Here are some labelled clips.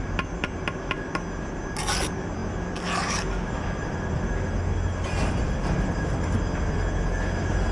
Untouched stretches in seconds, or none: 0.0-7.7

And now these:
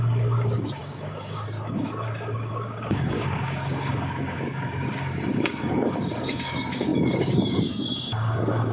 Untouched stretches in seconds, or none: none